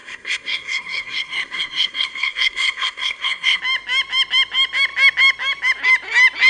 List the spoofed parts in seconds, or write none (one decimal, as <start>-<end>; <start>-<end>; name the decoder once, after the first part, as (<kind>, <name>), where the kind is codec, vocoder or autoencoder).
0.0-3.6 (codec, SNAC)